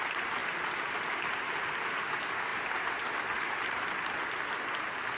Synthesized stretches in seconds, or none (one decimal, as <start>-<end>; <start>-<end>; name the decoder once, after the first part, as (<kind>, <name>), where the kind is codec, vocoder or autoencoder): none